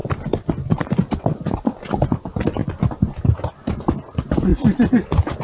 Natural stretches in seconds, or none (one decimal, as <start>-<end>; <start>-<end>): 0.0-4.5